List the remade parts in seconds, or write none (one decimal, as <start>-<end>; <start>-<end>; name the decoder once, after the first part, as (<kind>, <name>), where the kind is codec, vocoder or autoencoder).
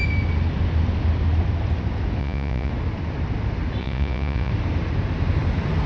2.2-2.7 (vocoder, Vocos); 3.8-4.5